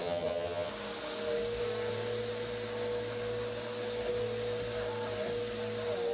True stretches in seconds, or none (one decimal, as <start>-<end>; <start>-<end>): 0.7-6.1